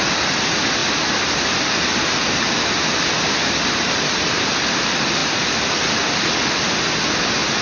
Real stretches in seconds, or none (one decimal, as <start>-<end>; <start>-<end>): 0.0-7.6